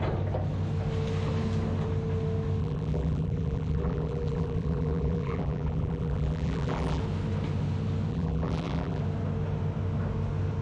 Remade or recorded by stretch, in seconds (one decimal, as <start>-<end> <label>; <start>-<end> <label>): 0.0-2.6 recorded; 2.6-7.0 remade; 7.0-8.1 recorded; 8.1-9.0 remade; 9.0-10.6 recorded